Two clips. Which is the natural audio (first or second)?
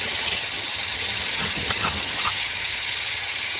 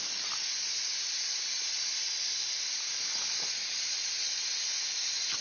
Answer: second